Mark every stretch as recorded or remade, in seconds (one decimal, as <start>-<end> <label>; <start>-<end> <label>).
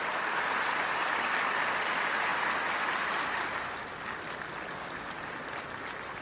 0.0-6.2 recorded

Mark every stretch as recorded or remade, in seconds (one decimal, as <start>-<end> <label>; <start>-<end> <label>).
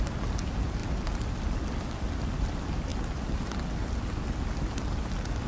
0.0-5.5 recorded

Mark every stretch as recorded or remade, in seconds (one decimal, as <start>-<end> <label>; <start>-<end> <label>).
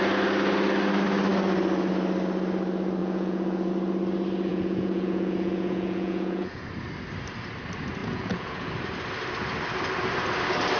0.0-3.0 recorded; 3.0-3.7 remade; 3.7-4.5 recorded; 4.5-6.7 remade; 6.7-8.0 recorded; 8.0-8.7 remade; 8.7-10.8 recorded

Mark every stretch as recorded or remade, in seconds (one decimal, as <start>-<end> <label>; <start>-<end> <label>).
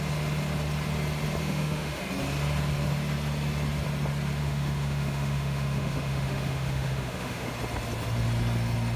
0.0-1.4 recorded; 1.4-2.0 remade; 2.0-4.4 recorded; 4.4-7.5 remade; 7.5-9.0 recorded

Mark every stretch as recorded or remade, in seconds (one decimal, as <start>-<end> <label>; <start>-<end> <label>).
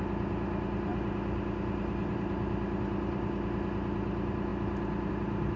0.0-5.6 recorded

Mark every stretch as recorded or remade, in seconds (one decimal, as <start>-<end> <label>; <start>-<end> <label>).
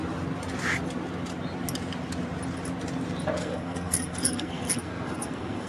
0.0-3.4 recorded; 3.4-5.7 remade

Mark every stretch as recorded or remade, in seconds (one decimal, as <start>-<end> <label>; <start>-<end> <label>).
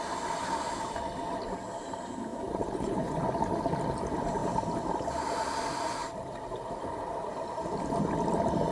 0.0-2.3 recorded; 2.3-3.3 remade; 3.3-8.7 recorded